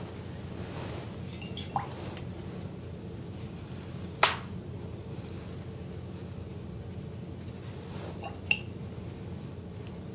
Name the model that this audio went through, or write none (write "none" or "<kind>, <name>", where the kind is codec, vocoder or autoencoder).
none